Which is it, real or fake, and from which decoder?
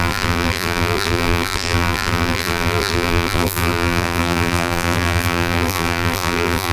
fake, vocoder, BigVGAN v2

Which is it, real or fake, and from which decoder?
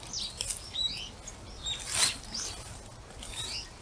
real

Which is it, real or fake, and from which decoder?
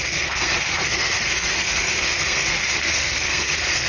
fake, codec, SNAC